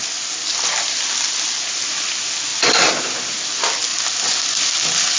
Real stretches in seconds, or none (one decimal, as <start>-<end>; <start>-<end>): 0.0-5.2